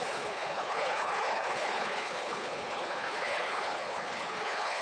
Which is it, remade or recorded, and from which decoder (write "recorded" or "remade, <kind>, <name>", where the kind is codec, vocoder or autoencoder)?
remade, codec, HILCodec